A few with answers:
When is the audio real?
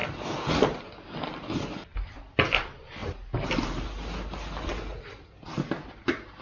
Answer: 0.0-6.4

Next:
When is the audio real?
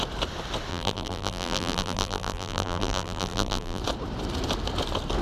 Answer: 0.0-0.7; 3.8-5.2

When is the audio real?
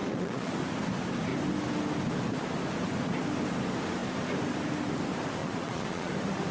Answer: 0.5-5.4; 6.1-6.5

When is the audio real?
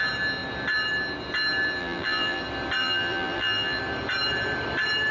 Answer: 0.0-1.8; 2.4-2.8; 3.8-5.1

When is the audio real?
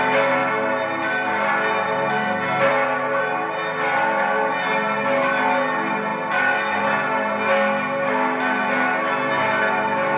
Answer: 0.0-10.2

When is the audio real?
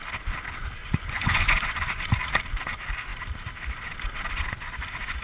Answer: 0.0-0.8; 2.1-5.2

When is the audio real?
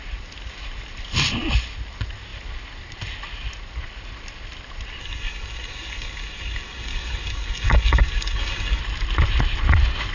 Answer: 0.0-5.0; 8.8-10.1